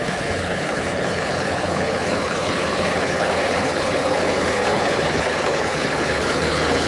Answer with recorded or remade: remade